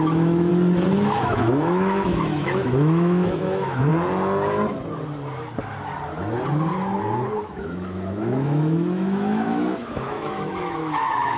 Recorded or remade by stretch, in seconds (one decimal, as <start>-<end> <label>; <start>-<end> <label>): 0.0-0.5 remade; 0.5-1.2 recorded; 1.2-3.9 remade; 3.9-7.4 recorded; 7.4-11.4 remade